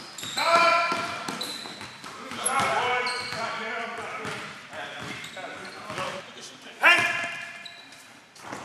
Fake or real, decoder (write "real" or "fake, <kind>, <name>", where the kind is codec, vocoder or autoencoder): real